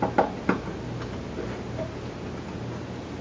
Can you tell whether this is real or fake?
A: real